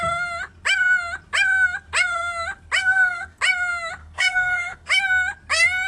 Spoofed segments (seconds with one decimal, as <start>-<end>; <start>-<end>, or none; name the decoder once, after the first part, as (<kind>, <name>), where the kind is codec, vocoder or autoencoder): 2.8-3.4 (codec, SNAC); 4.0-4.9